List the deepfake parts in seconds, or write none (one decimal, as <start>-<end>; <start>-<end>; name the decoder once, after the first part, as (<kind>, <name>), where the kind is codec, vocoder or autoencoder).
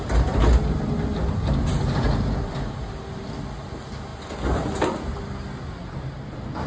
none